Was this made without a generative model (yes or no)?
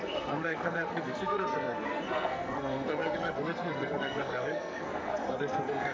no